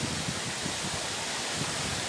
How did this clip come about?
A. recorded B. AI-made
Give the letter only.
A